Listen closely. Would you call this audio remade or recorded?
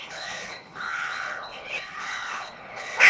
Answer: remade